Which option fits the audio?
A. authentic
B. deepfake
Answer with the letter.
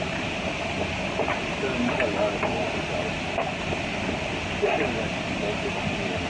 A